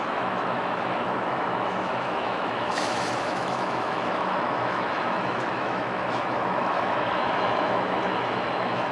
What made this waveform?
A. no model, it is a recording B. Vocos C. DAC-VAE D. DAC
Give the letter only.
C